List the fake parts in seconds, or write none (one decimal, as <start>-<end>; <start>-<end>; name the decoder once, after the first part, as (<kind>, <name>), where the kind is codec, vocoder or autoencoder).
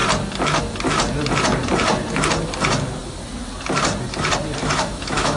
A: 4.6-5.4 (autoencoder, DAC-VAE)